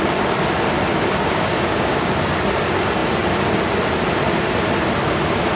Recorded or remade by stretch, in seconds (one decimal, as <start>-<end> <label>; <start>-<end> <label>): 0.0-1.2 recorded; 1.2-2.1 remade; 2.1-5.5 recorded